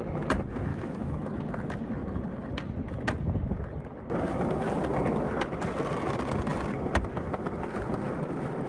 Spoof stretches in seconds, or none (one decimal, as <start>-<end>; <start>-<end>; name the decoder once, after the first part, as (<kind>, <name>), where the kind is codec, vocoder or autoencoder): 0.7-1.4 (autoencoder, DAC-VAE)